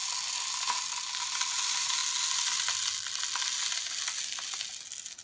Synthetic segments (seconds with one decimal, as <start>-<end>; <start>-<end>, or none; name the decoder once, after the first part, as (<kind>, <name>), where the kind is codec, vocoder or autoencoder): none